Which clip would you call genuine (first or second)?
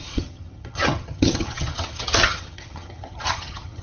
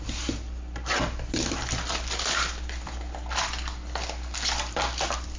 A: second